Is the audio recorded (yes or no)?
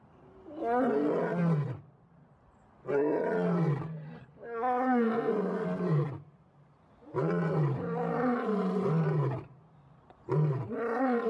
yes